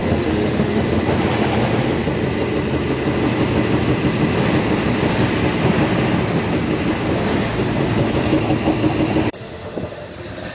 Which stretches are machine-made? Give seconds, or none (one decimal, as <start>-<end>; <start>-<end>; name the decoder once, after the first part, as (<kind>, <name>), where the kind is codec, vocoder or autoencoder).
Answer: 0.0-0.8 (autoencoder, DAC-VAE); 9.3-10.1